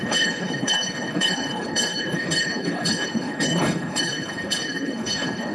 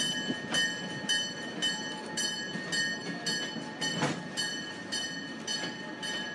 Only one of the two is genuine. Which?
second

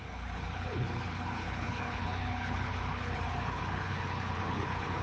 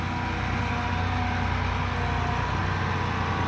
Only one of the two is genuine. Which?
second